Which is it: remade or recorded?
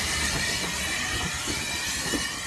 recorded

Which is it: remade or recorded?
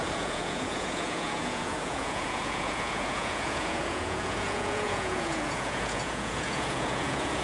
remade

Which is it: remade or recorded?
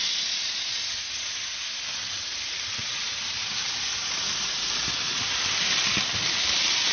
recorded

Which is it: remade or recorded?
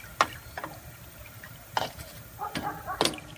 recorded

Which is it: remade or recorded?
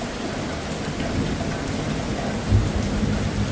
recorded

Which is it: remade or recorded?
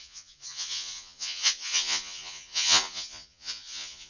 remade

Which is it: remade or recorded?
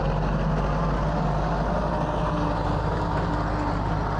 recorded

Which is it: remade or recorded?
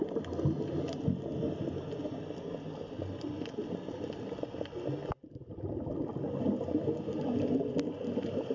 recorded